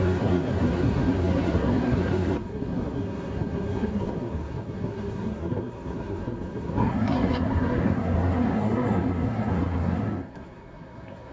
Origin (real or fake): fake